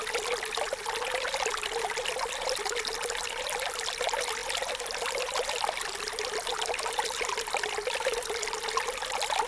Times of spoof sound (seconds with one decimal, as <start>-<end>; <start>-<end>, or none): none